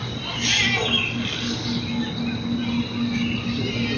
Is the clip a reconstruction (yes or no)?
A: no